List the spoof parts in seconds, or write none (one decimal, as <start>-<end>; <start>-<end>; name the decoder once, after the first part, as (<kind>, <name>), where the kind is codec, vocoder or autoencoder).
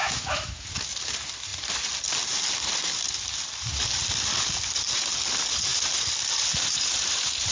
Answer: 0.0-0.6 (autoencoder, DAC-VAE)